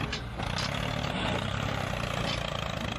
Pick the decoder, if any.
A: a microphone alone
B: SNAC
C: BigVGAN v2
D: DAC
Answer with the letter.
A